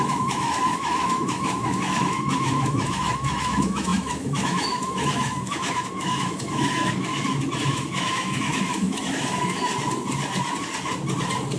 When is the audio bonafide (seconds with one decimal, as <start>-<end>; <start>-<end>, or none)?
7.1-7.7; 9.7-11.6